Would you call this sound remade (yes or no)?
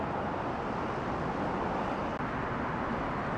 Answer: no